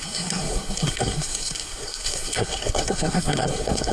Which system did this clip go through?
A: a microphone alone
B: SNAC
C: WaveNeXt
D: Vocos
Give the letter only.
B